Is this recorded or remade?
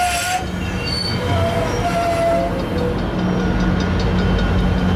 recorded